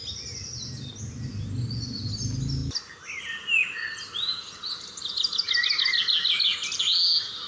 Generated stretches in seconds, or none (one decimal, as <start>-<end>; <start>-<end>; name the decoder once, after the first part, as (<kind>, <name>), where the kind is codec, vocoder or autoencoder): none